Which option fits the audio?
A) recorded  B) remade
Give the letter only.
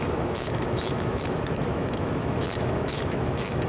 B